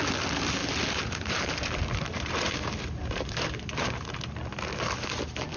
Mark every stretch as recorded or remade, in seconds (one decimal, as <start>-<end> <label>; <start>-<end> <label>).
0.0-0.6 recorded; 0.6-4.0 remade; 4.0-5.6 recorded